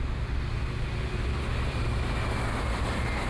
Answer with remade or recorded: recorded